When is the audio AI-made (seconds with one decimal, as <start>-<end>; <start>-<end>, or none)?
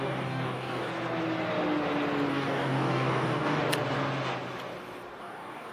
0.0-0.9; 2.3-3.6; 5.2-5.7